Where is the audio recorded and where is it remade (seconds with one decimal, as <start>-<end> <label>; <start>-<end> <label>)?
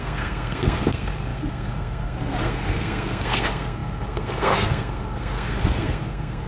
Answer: 0.0-6.5 remade